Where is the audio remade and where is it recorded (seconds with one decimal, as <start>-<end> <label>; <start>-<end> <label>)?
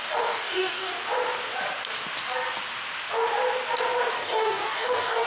0.0-0.9 remade; 0.9-4.1 recorded; 4.1-5.3 remade